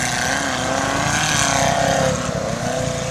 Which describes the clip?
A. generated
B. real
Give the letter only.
B